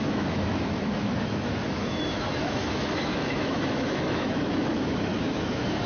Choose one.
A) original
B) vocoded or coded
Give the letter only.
B